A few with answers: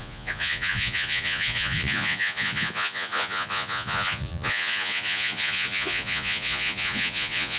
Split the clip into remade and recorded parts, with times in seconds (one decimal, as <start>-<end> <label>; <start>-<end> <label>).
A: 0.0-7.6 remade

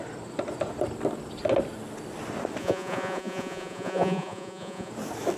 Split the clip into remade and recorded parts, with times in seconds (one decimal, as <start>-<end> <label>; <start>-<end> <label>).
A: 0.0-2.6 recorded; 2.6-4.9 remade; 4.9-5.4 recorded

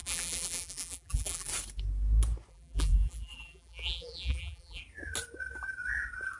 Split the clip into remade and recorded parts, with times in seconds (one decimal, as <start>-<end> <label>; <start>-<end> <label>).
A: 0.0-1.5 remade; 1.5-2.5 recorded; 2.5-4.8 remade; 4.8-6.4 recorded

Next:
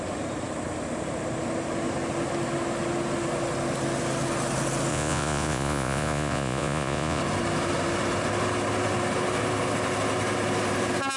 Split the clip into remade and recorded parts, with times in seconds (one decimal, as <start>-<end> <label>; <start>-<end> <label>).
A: 0.0-4.9 recorded; 4.9-7.2 remade; 7.2-11.2 recorded

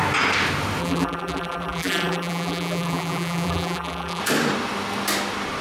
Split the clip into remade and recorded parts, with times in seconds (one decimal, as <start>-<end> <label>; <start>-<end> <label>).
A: 0.0-0.8 recorded; 0.8-4.2 remade; 4.2-5.6 recorded

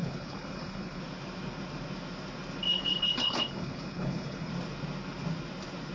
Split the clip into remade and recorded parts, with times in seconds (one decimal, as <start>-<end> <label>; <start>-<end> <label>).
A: 0.0-1.0 remade; 1.0-2.7 recorded; 2.7-4.5 remade; 4.5-5.9 recorded

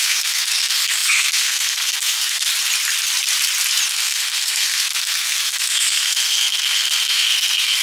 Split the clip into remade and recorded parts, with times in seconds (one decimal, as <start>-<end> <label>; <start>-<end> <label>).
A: 0.0-2.5 remade; 2.5-3.9 recorded; 3.9-7.8 remade

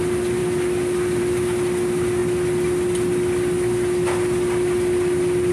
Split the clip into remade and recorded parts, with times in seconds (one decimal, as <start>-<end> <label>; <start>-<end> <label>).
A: 0.0-5.5 recorded